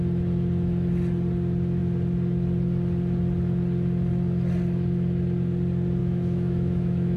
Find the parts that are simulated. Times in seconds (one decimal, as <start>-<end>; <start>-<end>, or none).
6.0-7.2